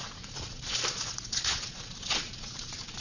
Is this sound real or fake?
fake